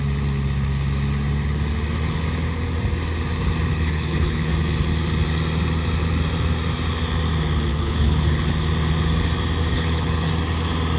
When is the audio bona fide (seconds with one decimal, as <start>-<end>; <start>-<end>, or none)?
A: 0.0-3.7; 4.5-7.7; 8.5-9.7; 10.3-11.0